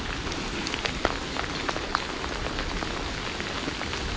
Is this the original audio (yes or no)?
yes